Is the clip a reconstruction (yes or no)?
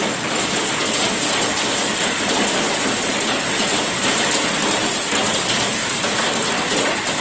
no